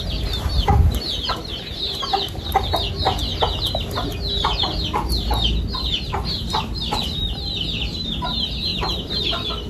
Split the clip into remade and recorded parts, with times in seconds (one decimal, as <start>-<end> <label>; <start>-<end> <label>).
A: 0.0-1.4 recorded; 1.4-2.6 remade; 2.6-8.7 recorded; 8.7-9.2 remade; 9.2-9.7 recorded